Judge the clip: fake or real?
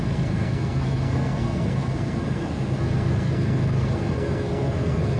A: fake